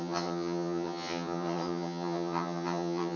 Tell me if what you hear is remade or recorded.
remade